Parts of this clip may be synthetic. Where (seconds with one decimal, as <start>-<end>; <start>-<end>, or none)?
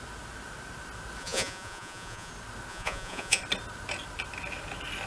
1.2-2.3; 2.7-3.4